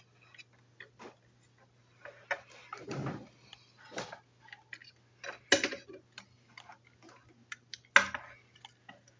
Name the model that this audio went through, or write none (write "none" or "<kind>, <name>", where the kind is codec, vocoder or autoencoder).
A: none